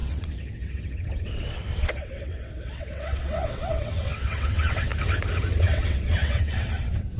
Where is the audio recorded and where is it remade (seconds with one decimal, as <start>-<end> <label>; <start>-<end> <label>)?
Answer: 0.0-4.9 remade; 4.9-5.6 recorded; 5.6-7.2 remade